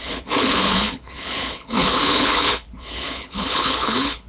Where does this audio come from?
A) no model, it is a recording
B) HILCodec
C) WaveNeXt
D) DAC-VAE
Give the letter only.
B